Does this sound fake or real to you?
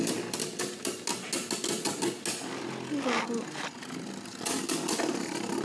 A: real